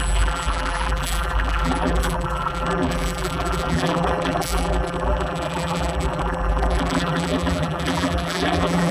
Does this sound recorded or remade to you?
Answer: remade